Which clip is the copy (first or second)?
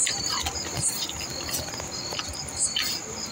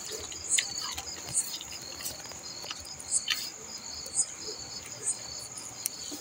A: second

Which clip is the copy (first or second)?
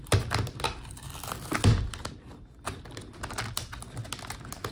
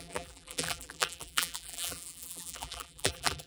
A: second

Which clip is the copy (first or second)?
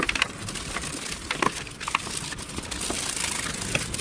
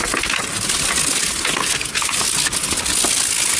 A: first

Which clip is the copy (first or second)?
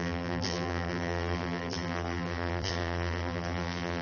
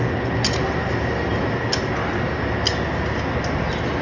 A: first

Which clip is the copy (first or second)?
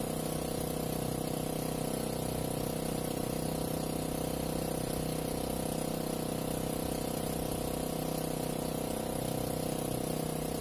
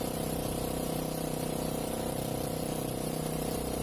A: second